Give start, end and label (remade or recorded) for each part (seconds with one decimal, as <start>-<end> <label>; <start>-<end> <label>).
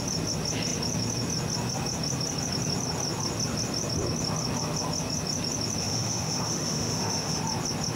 0.0-5.8 recorded; 5.8-7.4 remade; 7.4-8.0 recorded